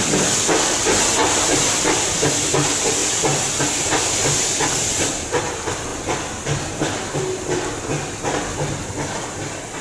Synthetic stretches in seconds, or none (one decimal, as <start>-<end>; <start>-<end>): 1.2-2.3